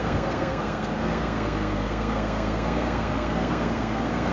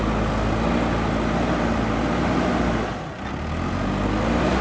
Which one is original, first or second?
second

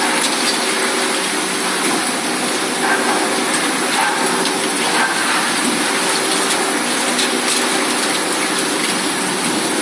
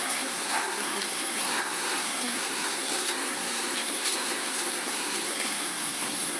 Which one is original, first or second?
first